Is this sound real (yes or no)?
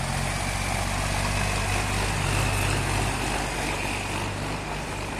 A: yes